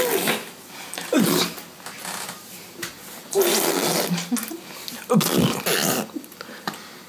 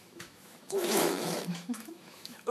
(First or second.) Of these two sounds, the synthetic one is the second